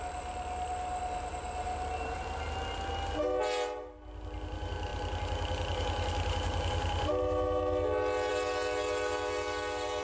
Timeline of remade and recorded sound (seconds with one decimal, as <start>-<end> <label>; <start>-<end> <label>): 0.0-10.0 recorded